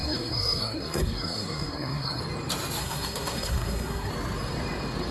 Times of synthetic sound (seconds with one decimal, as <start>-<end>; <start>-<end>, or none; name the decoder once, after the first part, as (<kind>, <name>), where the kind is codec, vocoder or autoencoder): 0.0-2.2 (codec, SNAC); 2.8-4.1